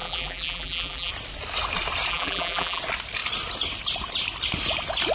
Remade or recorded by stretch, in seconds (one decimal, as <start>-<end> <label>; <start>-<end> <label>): 0.0-1.1 remade; 1.1-2.1 recorded; 2.1-2.8 remade; 2.8-5.1 recorded